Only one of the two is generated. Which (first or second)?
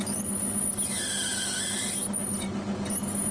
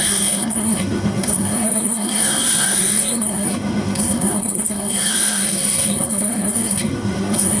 second